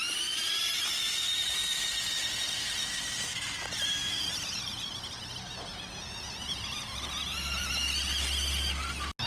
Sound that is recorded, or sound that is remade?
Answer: recorded